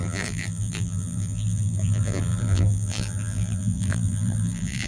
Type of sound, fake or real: fake